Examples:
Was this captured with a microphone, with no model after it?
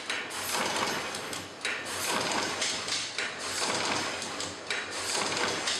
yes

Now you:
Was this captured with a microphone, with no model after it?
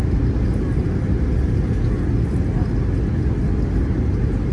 yes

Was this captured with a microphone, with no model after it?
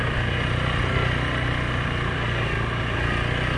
yes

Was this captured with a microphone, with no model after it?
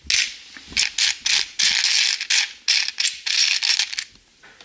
yes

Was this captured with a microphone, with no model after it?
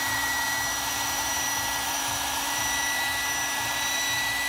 no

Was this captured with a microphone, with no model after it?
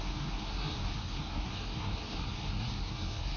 no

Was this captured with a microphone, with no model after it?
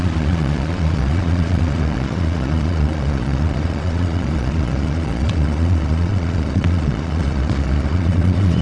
no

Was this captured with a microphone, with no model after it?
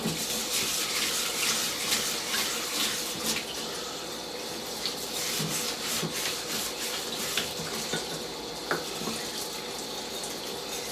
yes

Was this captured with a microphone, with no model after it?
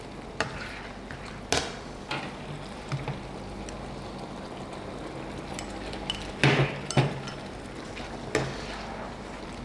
yes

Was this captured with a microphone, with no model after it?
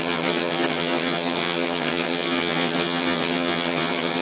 no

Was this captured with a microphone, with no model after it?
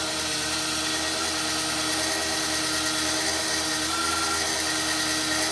yes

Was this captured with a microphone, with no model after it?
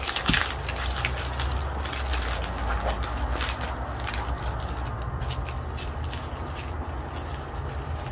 yes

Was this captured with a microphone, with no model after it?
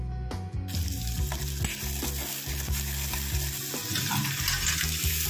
yes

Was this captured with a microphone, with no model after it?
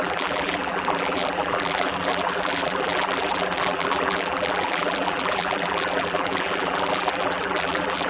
no